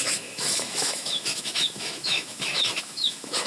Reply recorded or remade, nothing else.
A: remade